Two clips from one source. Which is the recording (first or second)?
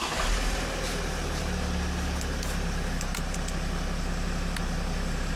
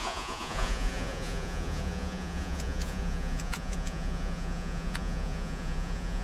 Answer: first